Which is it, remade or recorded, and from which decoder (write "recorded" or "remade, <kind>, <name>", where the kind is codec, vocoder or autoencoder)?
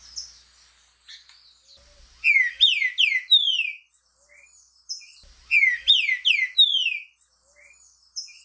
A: recorded